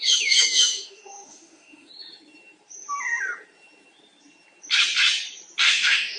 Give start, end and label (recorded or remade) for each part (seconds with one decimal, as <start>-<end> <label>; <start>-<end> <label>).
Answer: 0.0-1.9 remade; 1.9-5.6 recorded; 5.6-6.2 remade